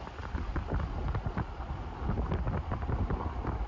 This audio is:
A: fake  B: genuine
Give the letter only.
B